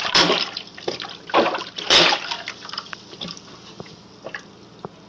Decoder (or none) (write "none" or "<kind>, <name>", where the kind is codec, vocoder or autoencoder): none